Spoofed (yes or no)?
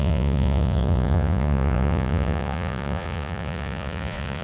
yes